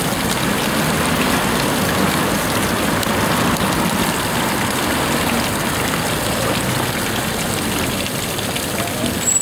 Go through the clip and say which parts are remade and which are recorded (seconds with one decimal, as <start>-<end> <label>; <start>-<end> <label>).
0.0-9.4 recorded